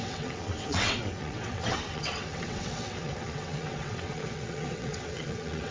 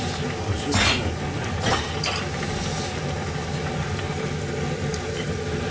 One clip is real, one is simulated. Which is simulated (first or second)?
first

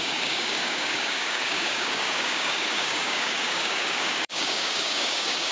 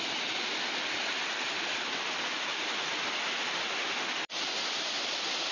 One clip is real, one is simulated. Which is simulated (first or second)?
first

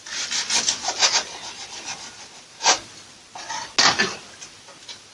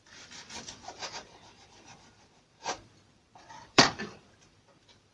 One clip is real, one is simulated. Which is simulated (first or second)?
second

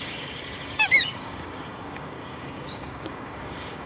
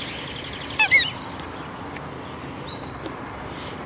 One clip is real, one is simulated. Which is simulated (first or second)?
first